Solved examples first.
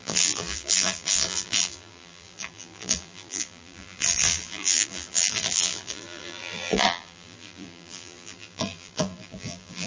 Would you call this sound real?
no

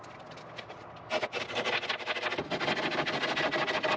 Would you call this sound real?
yes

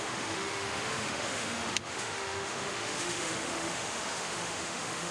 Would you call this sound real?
no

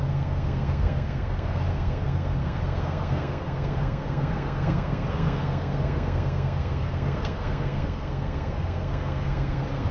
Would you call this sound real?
no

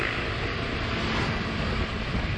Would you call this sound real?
yes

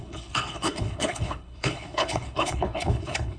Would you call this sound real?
no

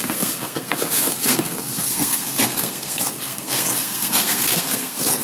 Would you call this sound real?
no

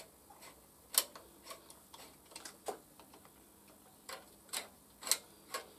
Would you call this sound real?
yes